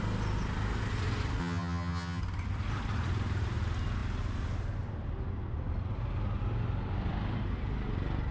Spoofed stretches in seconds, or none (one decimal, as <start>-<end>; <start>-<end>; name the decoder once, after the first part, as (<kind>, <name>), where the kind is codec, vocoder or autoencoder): 1.4-2.2 (vocoder, HiFi-GAN)